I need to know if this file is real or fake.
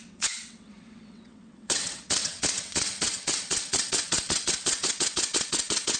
fake